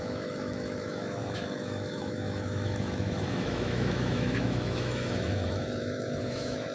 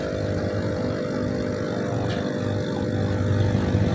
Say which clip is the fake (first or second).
first